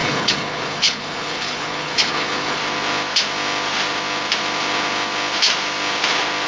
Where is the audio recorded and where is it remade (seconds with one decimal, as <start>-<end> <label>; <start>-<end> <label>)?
0.0-2.6 remade; 2.6-6.5 recorded